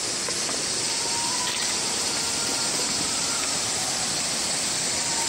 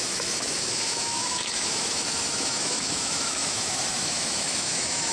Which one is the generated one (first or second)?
second